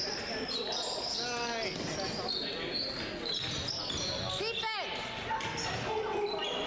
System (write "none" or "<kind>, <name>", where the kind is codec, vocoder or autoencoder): none